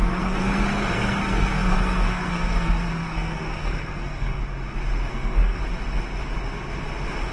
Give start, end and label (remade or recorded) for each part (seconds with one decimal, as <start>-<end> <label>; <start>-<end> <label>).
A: 0.0-4.4 remade; 4.4-5.1 recorded; 5.1-5.6 remade; 5.6-7.3 recorded